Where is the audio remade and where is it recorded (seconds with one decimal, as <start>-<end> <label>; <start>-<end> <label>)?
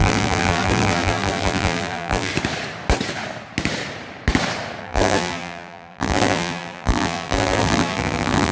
0.0-2.3 remade; 2.3-4.8 recorded; 4.8-8.5 remade